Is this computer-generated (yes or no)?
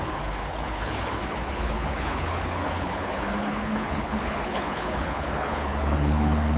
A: yes